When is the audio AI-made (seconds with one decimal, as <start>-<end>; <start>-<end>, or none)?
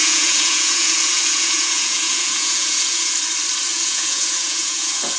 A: 0.0-3.1; 3.7-5.2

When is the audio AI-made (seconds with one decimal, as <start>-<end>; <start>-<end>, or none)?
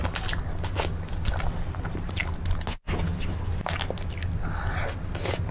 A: none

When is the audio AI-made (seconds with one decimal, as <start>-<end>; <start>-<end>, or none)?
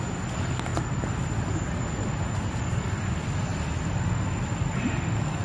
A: none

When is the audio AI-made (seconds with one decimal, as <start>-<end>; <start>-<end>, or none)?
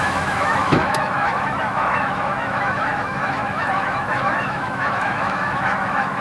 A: 0.0-6.2